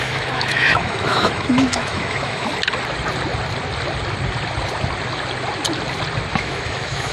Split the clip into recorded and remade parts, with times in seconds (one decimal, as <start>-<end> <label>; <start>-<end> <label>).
0.0-2.5 remade; 2.5-6.3 recorded; 6.3-7.1 remade